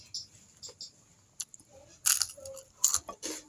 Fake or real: real